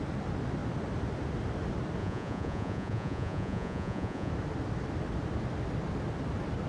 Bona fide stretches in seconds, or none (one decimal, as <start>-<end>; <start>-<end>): 0.0-2.0; 4.3-6.7